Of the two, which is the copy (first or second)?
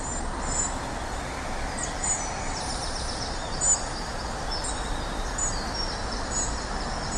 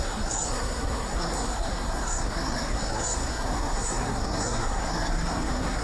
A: second